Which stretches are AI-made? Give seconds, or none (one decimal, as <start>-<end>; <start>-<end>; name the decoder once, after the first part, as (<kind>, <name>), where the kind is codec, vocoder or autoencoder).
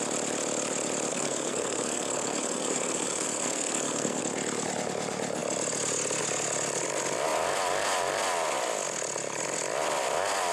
1.1-4.2 (codec, SNAC)